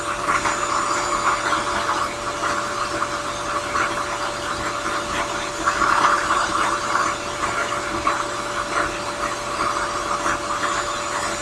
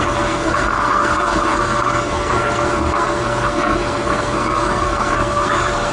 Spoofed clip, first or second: second